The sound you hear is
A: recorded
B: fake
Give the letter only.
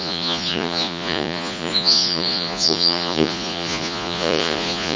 B